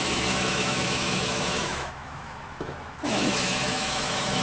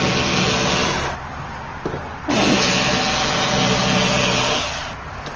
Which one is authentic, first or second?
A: second